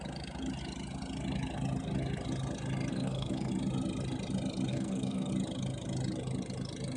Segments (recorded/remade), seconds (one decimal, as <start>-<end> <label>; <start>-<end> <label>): 0.0-2.9 recorded; 2.9-3.5 remade; 3.5-4.7 recorded; 4.7-5.3 remade; 5.3-7.0 recorded